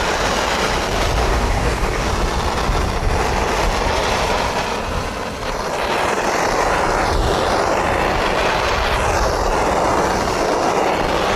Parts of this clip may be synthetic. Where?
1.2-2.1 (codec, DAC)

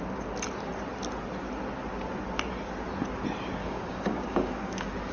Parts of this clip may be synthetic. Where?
3.6-5.1 (codec, DAC)

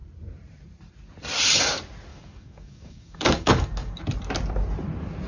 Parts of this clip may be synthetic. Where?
2.1-4.0 (codec, DAC)

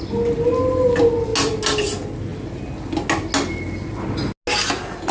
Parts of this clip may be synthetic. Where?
none

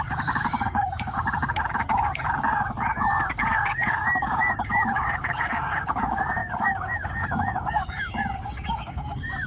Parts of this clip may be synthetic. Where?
0.0-9.5 (codec, DAC)

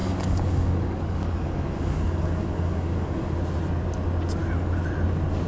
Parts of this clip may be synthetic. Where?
0.0-3.3 (codec, DAC)

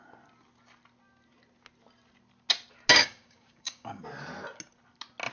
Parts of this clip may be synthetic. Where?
2.9-4.0 (codec, DAC)